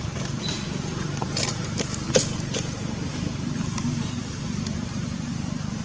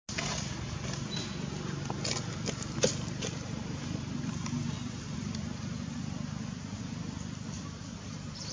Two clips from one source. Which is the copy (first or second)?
first